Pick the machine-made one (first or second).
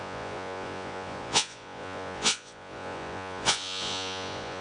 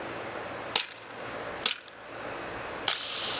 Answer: first